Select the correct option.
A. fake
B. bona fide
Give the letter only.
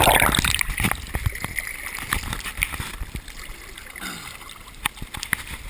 B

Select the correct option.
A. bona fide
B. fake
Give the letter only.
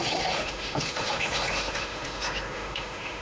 B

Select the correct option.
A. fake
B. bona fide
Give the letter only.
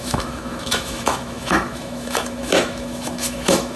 A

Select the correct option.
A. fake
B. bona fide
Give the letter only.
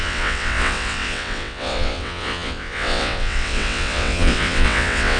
A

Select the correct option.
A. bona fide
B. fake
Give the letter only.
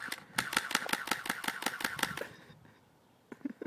A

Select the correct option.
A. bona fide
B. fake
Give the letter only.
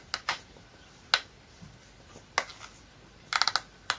A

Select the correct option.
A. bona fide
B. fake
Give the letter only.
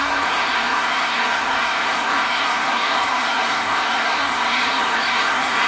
B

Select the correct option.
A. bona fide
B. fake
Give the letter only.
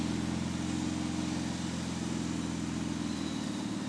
A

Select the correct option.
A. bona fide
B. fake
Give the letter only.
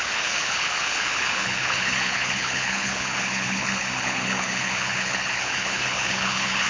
B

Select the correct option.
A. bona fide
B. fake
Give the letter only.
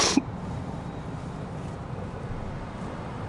B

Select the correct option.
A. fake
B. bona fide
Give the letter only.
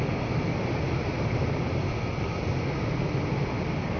B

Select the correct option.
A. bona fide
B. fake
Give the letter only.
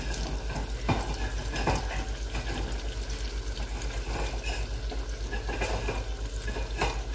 A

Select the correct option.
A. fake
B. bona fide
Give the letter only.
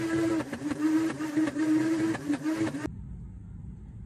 A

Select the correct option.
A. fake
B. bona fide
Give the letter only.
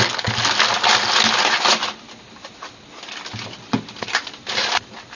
B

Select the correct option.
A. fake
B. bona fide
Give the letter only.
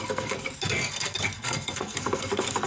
A